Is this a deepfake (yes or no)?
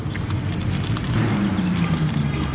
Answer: no